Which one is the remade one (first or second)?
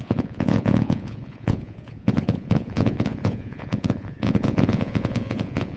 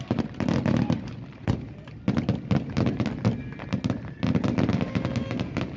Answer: first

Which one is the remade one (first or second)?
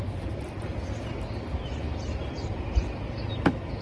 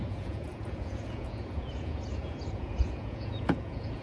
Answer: second